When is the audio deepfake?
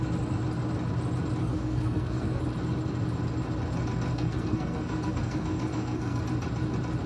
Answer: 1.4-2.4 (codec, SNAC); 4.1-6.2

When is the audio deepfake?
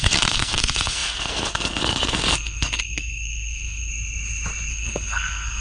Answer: 0.0-3.9 (codec, SNAC); 4.7-5.6